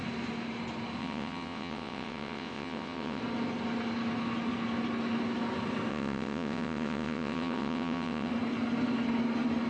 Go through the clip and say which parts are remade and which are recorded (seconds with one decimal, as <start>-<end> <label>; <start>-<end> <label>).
0.0-1.0 recorded; 1.0-3.2 remade; 3.2-5.9 recorded; 5.9-8.3 remade; 8.3-9.7 recorded